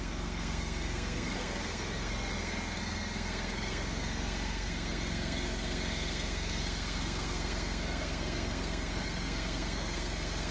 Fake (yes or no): yes